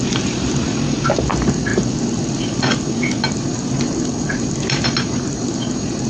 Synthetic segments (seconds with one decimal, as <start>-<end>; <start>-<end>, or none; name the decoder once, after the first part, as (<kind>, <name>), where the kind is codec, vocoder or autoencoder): none